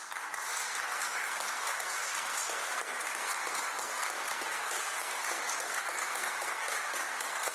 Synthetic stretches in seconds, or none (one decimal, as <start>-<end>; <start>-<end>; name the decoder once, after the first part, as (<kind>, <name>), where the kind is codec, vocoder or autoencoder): 0.0-7.5 (codec, SNAC)